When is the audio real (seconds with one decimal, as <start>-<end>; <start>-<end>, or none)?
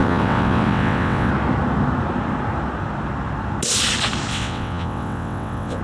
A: 1.3-4.3